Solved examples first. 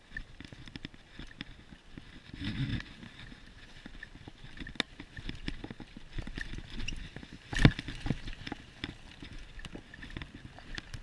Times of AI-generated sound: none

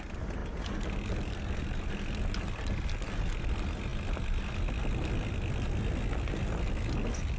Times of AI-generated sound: none

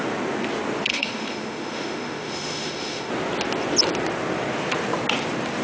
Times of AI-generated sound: 0.9-3.1

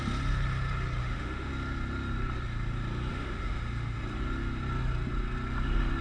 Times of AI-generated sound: 1.0-1.5; 3.1-4.0

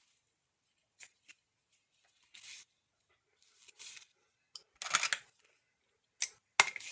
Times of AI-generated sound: none

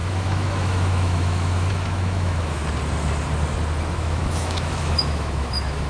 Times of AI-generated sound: 0.0-2.6; 3.9-5.9

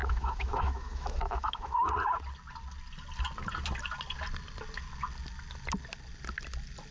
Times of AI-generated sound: 0.0-1.9